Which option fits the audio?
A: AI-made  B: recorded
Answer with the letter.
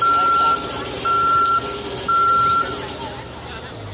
B